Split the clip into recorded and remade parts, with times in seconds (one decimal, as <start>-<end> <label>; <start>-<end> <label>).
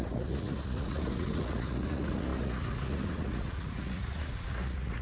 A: 0.0-5.0 remade